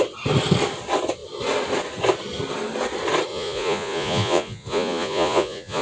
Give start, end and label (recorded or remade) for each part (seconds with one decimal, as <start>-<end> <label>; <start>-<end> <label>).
0.0-3.3 recorded; 3.3-5.8 remade